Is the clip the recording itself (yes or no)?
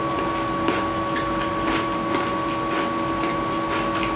yes